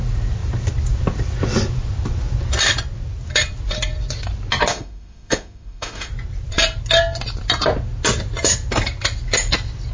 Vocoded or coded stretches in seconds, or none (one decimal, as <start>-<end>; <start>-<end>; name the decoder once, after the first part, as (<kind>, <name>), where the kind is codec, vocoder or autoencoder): 4.7-6.1 (autoencoder, DAC-VAE)